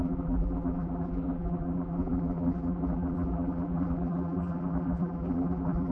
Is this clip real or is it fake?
fake